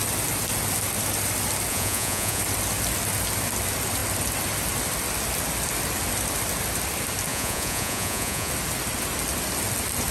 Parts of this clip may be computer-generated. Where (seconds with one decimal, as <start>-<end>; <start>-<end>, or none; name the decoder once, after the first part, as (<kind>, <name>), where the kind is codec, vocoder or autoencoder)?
1.7-2.4 (vocoder, Vocos); 7.3-8.5